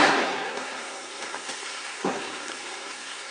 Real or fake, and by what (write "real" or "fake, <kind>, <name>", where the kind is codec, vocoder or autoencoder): fake, codec, SNAC